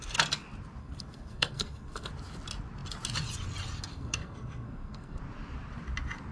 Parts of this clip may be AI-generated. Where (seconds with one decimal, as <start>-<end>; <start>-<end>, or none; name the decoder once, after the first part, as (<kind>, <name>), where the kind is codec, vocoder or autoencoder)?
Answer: 0.8-2.1 (codec, SNAC); 3.9-5.2